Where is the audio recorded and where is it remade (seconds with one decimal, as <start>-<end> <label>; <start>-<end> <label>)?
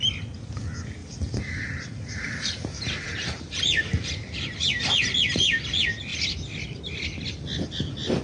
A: 0.0-1.0 recorded; 1.0-4.1 remade; 4.1-8.2 recorded